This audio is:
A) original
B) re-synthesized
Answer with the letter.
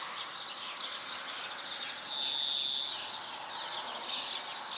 A